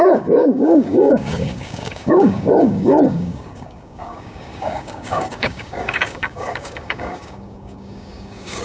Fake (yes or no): yes